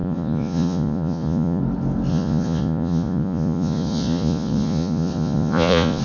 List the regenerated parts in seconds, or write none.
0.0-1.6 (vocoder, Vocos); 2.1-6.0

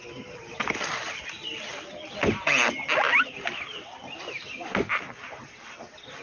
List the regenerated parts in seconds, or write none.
none

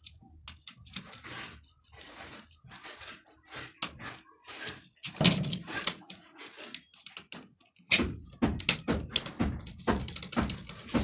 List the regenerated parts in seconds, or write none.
5.7-6.5 (vocoder, Vocos); 7.5-8.2

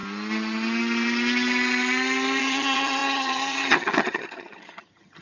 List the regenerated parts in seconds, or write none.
2.4-5.2 (vocoder, HiFi-GAN)